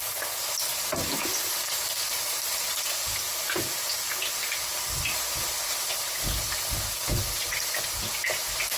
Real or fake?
real